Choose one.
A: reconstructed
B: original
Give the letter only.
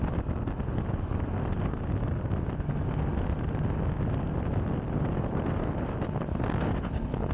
B